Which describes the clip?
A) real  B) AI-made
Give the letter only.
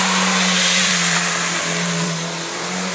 B